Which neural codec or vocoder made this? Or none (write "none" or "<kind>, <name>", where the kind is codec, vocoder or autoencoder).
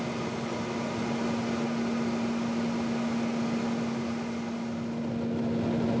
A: none